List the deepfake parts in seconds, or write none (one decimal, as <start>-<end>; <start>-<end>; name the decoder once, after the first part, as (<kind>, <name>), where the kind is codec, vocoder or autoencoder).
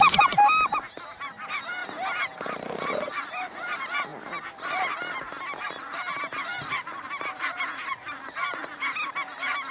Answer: none